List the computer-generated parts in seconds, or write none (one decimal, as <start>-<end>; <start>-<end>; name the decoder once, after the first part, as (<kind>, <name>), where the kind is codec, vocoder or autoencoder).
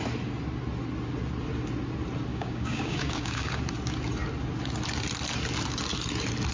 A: 2.3-3.6 (codec, DAC)